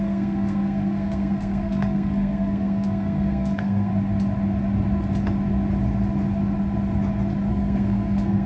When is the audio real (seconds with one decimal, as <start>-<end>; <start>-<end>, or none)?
3.9-7.5